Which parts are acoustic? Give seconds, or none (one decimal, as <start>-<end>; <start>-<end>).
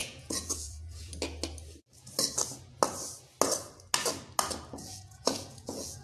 1.1-4.7